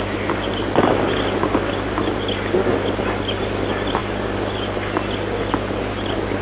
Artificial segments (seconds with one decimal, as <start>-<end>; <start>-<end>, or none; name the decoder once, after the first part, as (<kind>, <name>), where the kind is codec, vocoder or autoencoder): none